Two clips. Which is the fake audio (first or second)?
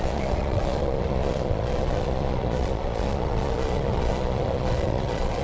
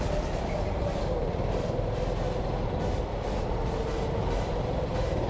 first